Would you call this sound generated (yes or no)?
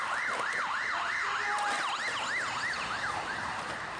no